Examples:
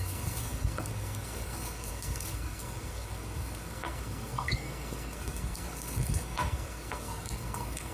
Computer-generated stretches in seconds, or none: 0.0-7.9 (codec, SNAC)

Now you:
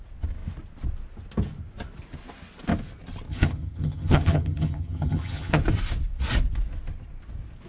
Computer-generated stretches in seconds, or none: 3.3-5.6 (vocoder, HiFi-GAN)

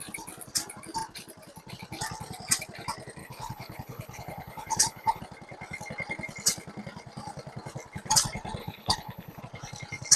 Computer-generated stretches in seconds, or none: 3.2-5.2 (codec, HILCodec); 8.6-9.4

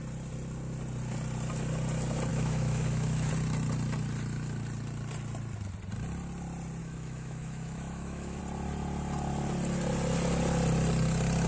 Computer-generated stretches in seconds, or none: 2.3-3.3 (autoencoder, DAC-VAE); 6.8-8.4

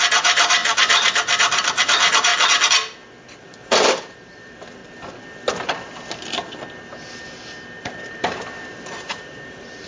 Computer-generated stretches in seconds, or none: 0.0-2.3 (vocoder, BigVGAN v2); 3.4-4.8; 7.8-9.9